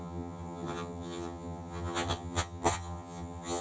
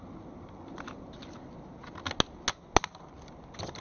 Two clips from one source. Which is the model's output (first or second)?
first